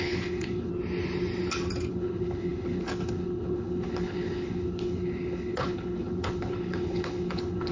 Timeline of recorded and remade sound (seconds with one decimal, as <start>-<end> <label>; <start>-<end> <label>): 0.0-0.7 remade; 0.7-1.9 recorded; 1.9-7.7 remade